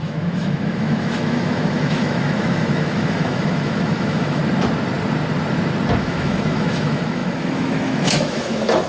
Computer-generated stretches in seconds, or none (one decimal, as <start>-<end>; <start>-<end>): 0.0-4.4; 6.0-8.9

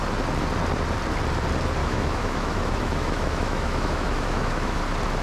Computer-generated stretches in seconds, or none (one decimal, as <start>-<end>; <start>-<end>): 1.8-4.8